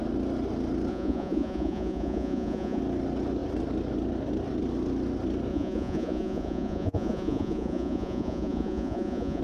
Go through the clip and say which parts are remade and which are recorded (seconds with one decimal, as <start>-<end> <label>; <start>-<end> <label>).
0.0-0.9 recorded; 0.9-2.8 remade; 2.8-5.5 recorded; 5.5-9.4 remade